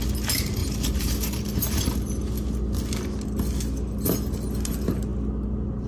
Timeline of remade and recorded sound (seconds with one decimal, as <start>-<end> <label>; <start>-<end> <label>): 0.0-0.6 recorded; 0.6-1.8 remade; 1.8-5.9 recorded